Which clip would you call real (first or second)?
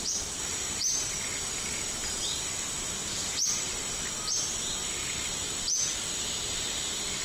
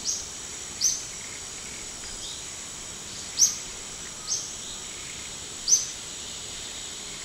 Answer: first